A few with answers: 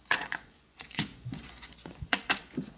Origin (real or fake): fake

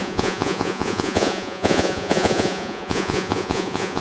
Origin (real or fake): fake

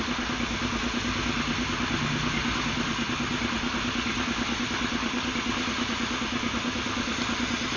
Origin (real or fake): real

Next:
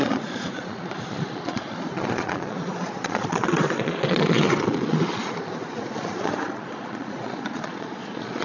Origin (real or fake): fake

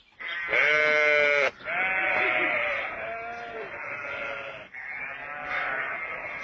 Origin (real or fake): real